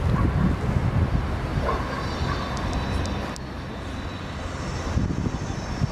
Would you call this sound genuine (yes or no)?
yes